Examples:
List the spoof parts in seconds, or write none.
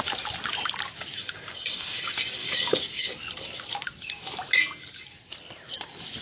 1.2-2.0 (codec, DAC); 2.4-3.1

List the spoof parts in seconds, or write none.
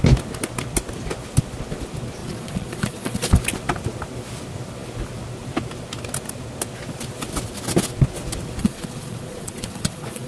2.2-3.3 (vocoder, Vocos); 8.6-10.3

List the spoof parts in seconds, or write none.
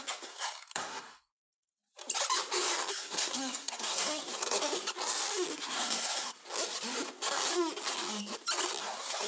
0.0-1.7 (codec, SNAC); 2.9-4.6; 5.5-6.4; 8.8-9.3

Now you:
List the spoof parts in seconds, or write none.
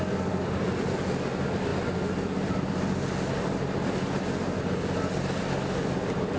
none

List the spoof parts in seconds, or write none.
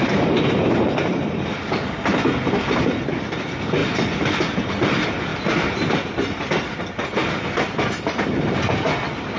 3.8-4.4 (vocoder, BigVGAN v2); 5.3-6.8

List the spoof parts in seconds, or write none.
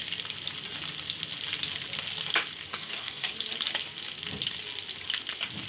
2.7-3.3 (codec, DAC)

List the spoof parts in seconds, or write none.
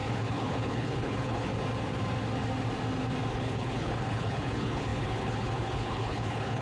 0.0-1.5 (codec, HILCodec); 3.3-6.6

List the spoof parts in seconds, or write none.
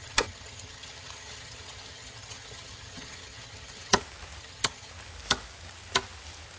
0.0-4.0 (vocoder, HiFi-GAN); 4.4-4.9